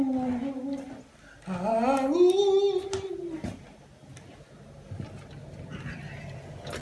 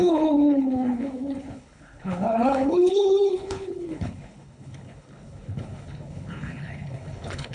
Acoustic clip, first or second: first